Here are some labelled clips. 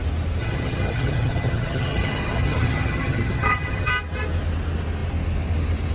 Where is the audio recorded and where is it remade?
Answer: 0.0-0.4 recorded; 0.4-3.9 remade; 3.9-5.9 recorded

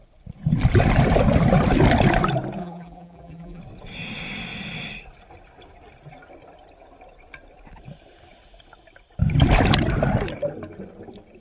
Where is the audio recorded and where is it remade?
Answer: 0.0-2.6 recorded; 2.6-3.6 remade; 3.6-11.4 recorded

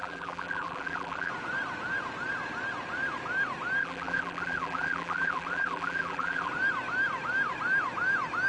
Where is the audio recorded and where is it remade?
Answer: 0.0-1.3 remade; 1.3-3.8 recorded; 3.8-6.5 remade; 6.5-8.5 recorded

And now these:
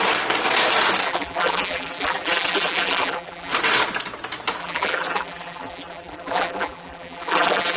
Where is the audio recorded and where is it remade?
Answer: 0.0-1.0 recorded; 1.0-3.5 remade; 3.5-4.6 recorded; 4.6-7.8 remade

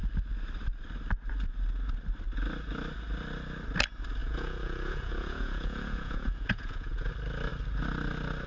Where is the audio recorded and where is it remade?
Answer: 0.0-4.2 recorded; 4.2-7.1 remade; 7.1-8.5 recorded